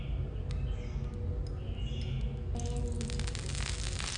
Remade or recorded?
recorded